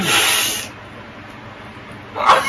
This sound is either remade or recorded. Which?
recorded